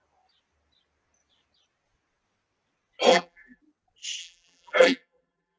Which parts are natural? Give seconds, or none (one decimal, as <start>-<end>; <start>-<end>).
0.0-3.1; 3.6-4.2